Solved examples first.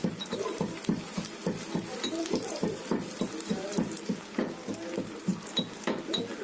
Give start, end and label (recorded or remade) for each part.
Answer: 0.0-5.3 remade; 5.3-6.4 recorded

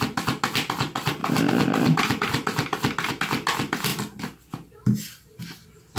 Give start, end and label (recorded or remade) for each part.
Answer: 0.0-1.2 recorded; 1.2-3.1 remade; 3.1-6.0 recorded

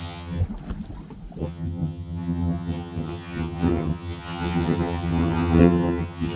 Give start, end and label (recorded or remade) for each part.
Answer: 0.0-0.4 remade; 0.4-1.4 recorded; 1.4-6.4 remade

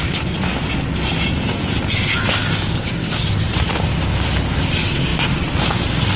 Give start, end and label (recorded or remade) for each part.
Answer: 0.0-2.4 recorded; 2.4-3.2 remade; 3.2-6.2 recorded

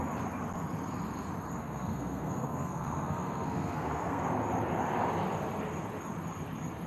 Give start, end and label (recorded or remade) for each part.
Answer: 0.0-1.6 recorded; 1.6-4.2 remade; 4.2-6.9 recorded

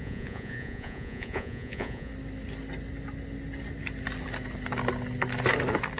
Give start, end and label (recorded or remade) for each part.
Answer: 0.0-2.1 remade; 2.1-6.0 recorded